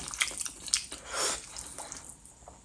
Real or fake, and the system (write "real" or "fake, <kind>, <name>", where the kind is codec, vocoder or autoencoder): real